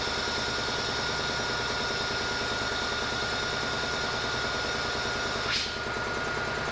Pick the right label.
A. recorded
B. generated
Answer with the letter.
A